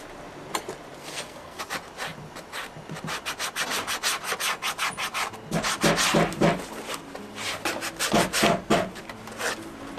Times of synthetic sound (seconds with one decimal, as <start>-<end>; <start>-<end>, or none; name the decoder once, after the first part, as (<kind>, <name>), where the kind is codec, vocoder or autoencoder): 1.0-1.6 (codec, SNAC)